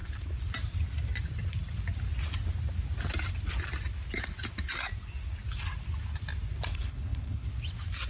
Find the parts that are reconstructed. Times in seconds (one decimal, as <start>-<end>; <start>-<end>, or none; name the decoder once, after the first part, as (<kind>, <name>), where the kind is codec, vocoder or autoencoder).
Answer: 6.7-7.5 (codec, HILCodec)